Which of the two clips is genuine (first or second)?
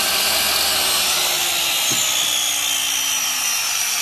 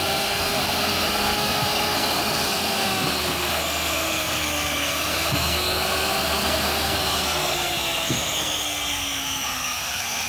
first